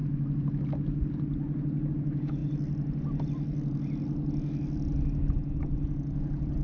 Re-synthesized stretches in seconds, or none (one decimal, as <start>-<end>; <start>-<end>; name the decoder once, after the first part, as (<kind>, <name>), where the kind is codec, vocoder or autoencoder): 1.9-2.4 (vocoder, Vocos); 5.3-6.6